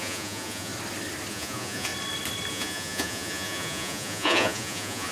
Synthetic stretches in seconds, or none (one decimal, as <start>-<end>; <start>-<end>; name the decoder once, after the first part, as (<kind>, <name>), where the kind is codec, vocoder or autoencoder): 0.0-0.7 (vocoder, Vocos); 1.3-1.9; 2.5-5.1